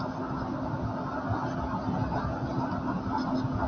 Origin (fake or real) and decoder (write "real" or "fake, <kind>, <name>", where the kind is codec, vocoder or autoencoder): real